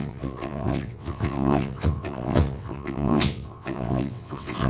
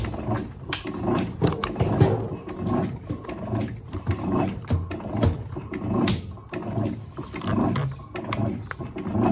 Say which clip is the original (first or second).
second